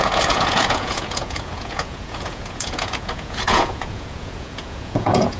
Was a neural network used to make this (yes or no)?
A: yes